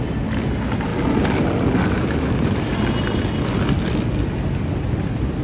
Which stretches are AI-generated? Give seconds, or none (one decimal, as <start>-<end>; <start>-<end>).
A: none